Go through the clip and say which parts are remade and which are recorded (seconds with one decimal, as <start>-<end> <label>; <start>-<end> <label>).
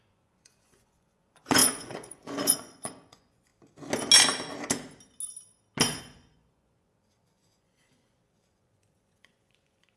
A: 0.0-3.5 remade; 3.5-6.0 recorded; 6.0-10.0 remade